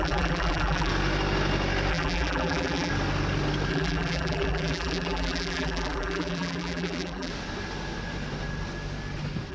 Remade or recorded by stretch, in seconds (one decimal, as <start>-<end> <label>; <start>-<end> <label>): 0.0-0.9 remade; 0.9-1.9 recorded; 1.9-2.9 remade; 2.9-3.7 recorded; 3.7-7.3 remade; 7.3-9.5 recorded